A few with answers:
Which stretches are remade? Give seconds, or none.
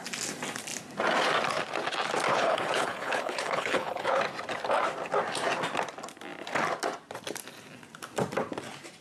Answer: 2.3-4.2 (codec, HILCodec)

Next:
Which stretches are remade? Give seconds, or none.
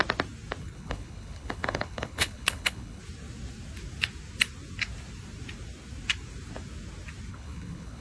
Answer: 0.6-3.0 (codec, HILCodec); 7.3-8.0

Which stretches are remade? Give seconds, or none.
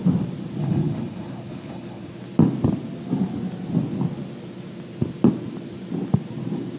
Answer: 0.6-2.1 (codec, HILCodec)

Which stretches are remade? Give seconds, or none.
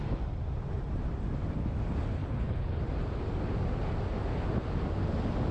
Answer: 2.2-2.8 (codec, HILCodec)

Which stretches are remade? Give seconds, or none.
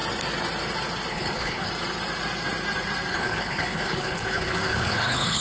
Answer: 1.1-1.7 (codec, HILCodec); 3.1-5.4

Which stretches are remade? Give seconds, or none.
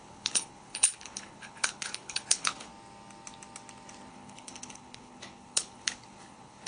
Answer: 0.0-2.7 (codec, HILCodec); 4.1-6.7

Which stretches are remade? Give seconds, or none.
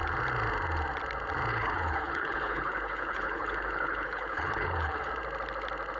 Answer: 1.5-5.1 (codec, HILCodec)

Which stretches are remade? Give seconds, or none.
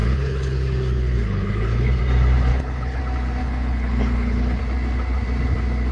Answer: 0.0-2.0 (codec, HILCodec); 2.5-3.0; 3.4-4.6